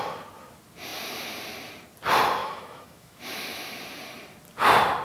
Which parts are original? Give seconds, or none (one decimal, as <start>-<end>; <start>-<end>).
0.0-2.4; 3.8-5.0